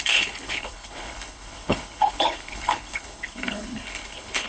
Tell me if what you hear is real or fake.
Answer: fake